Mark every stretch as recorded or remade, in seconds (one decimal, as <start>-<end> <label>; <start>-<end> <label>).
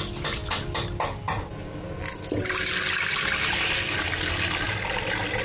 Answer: 0.0-5.4 recorded